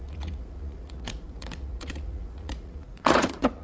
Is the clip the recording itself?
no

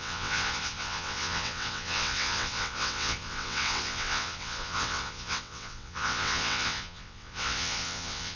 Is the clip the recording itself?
no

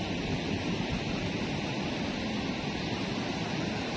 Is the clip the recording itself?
yes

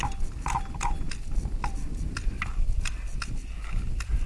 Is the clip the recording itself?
yes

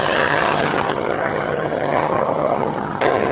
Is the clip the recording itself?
no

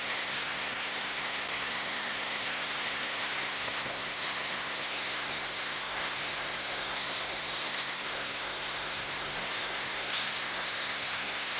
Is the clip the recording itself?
no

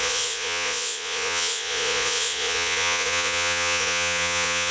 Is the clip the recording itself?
no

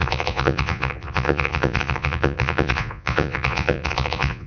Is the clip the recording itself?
no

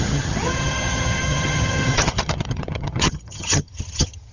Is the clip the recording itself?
no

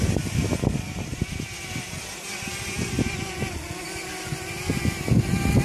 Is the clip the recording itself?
yes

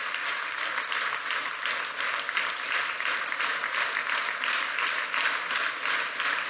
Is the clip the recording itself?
yes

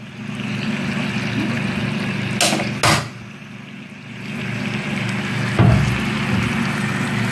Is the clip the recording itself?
yes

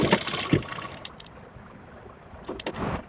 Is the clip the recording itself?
yes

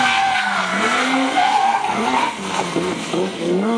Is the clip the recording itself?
no